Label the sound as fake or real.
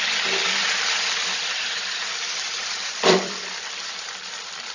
fake